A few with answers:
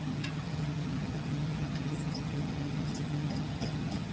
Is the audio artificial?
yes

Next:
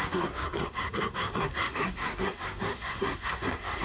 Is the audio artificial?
yes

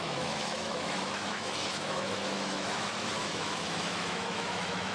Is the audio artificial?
yes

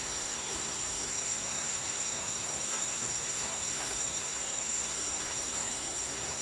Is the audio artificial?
yes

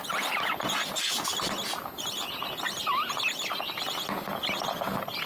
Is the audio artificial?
no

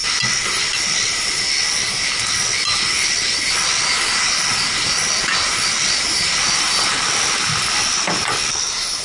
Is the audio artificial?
no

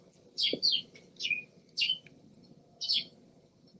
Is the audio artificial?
no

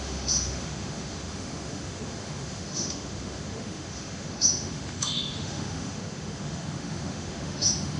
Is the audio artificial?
yes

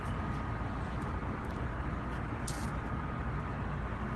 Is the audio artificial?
no